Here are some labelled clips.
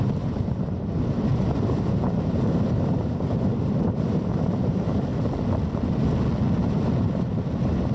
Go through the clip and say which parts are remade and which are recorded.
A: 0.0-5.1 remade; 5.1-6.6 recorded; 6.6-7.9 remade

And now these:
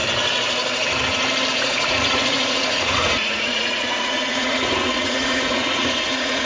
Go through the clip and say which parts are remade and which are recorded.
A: 0.0-1.5 recorded; 1.5-6.5 remade

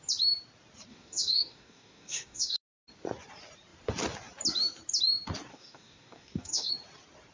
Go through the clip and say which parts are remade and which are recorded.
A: 0.0-0.9 recorded; 0.9-2.6 remade; 2.6-5.5 recorded; 5.5-6.7 remade; 6.7-7.3 recorded

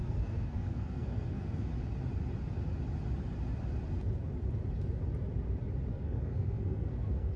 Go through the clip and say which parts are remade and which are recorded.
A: 0.0-1.7 remade; 1.7-5.9 recorded; 5.9-7.4 remade

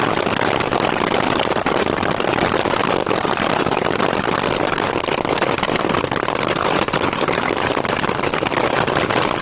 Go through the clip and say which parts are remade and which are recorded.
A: 0.0-3.0 recorded; 3.0-3.6 remade; 3.6-9.4 recorded

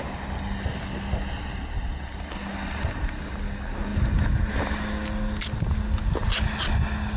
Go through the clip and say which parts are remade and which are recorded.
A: 0.0-7.2 recorded

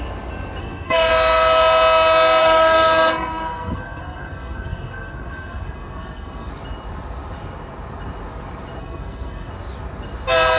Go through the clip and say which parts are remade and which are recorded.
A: 0.0-0.6 recorded; 0.6-1.1 remade; 1.1-2.4 recorded; 2.4-6.5 remade; 6.5-8.8 recorded; 8.8-9.5 remade; 9.5-10.6 recorded

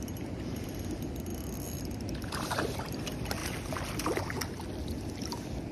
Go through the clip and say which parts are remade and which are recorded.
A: 0.0-1.3 remade; 1.3-1.8 recorded; 1.8-3.4 remade; 3.4-4.7 recorded; 4.7-5.7 remade